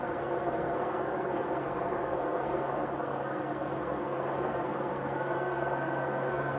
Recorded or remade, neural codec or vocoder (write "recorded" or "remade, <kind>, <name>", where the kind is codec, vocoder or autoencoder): remade, codec, SNAC